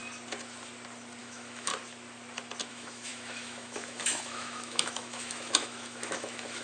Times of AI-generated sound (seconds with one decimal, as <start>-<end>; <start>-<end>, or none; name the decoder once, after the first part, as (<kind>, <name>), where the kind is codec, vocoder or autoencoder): 1.2-1.7 (autoencoder, DAC-VAE); 2.7-6.6